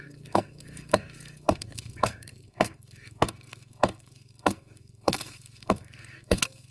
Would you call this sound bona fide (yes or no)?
no